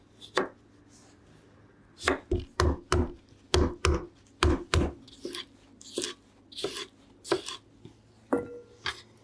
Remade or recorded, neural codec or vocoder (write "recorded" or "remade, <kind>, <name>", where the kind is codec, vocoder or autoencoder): recorded